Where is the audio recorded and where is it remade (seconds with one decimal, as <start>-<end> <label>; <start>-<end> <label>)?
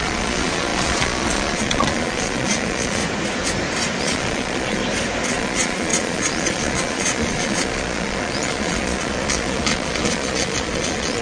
0.0-3.0 remade; 3.0-4.0 recorded; 4.0-4.8 remade; 4.8-5.3 recorded; 5.3-11.2 remade